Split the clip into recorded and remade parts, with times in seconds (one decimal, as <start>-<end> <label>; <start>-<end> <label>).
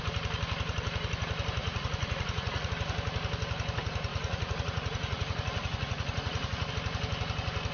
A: 0.0-1.6 recorded; 1.6-2.7 remade; 2.7-4.1 recorded; 4.1-6.7 remade; 6.7-7.7 recorded